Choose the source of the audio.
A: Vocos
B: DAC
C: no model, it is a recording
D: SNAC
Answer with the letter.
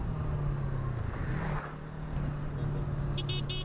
C